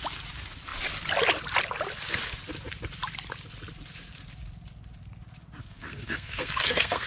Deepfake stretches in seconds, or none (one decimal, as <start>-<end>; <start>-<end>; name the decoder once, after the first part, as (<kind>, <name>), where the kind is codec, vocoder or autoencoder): 5.6-7.1 (codec, SNAC)